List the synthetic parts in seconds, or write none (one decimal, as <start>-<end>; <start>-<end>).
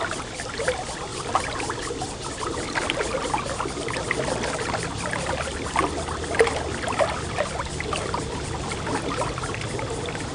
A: none